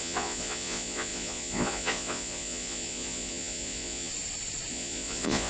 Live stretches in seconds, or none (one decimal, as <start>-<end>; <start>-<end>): 4.1-4.7